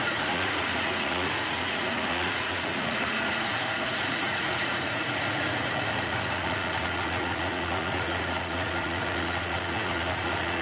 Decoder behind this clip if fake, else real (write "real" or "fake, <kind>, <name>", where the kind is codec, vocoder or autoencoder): fake, vocoder, Vocos